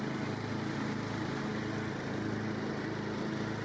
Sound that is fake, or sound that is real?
real